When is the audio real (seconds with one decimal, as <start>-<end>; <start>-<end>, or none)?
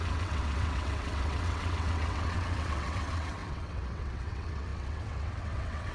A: none